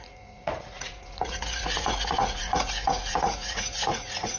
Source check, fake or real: fake